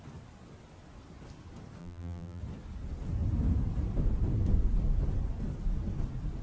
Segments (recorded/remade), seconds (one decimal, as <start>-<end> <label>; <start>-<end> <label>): 0.0-1.8 recorded; 1.8-2.4 remade; 2.4-6.4 recorded